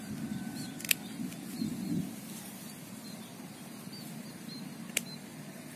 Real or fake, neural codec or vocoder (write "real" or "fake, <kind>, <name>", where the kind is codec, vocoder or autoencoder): real